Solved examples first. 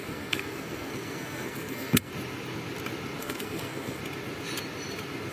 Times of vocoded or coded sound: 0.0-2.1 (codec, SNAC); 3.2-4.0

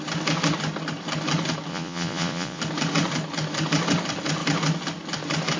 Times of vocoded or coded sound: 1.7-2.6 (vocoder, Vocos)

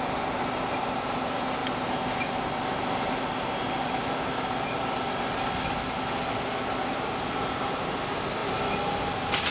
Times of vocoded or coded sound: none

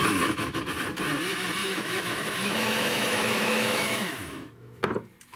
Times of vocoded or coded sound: 0.0-0.6 (autoencoder, DAC-VAE); 1.6-4.8

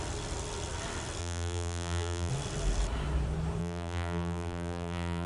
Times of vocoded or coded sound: 1.2-2.3 (vocoder, BigVGAN v2); 3.6-5.3

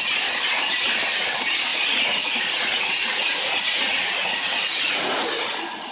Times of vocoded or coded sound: 1.7-5.2 (vocoder, Vocos)

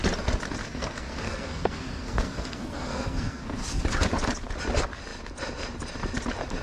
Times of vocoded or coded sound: 0.6-3.8 (codec, SNAC)

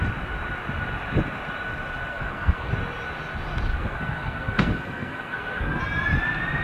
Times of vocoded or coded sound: 2.1-2.7 (codec, SNAC); 3.7-5.8